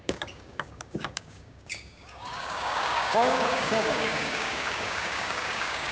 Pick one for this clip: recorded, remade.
remade